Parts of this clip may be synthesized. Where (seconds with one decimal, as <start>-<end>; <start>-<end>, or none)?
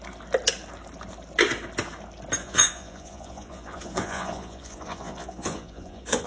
2.4-6.3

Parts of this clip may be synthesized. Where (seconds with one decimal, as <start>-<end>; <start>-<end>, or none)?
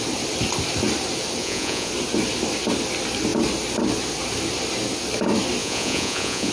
1.4-1.9; 5.6-6.5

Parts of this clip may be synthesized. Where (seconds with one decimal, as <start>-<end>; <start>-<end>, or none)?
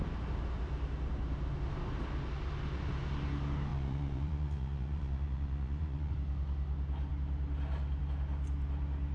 3.7-6.1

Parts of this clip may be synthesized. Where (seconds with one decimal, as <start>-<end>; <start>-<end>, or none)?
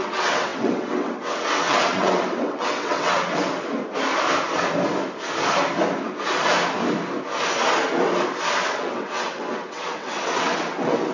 0.0-3.4; 8.6-11.1